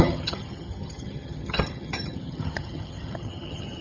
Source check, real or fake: fake